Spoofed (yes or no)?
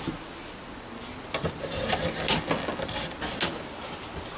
no